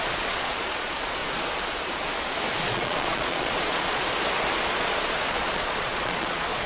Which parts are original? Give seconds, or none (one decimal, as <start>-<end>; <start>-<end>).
1.2-2.6; 4.0-4.7